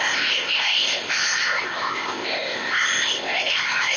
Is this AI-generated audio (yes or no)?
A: yes